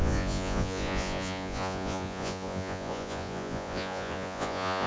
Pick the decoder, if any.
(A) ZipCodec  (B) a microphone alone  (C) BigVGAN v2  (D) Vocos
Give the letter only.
D